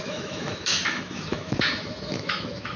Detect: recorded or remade remade